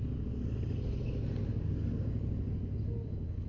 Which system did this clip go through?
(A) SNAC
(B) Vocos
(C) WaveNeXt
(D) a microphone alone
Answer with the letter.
D